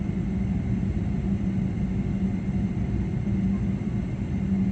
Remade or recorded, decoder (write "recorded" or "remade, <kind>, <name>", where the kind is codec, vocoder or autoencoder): recorded